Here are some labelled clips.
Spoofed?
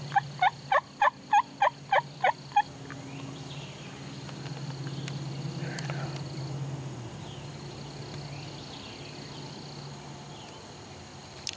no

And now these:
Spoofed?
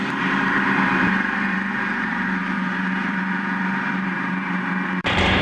yes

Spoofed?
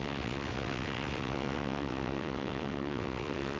yes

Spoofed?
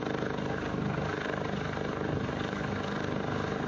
no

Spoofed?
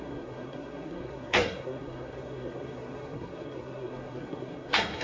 yes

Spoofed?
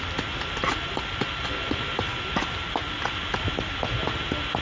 no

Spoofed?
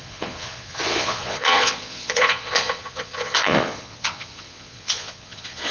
yes